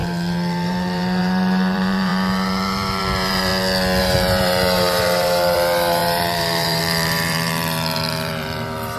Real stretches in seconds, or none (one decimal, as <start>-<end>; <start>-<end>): 3.5-4.0